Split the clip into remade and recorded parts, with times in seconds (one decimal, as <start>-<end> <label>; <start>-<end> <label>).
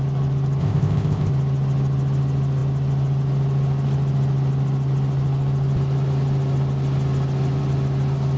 0.0-0.6 recorded; 0.6-1.3 remade; 1.3-8.4 recorded